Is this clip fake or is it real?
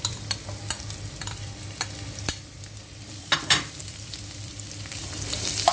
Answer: fake